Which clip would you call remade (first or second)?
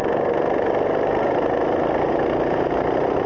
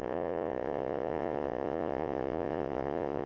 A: second